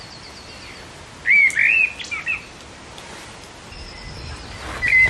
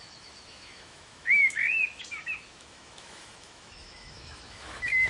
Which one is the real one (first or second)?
first